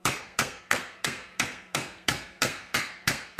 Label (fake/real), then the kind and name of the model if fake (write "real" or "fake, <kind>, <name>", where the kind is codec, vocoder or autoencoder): fake, codec, SNAC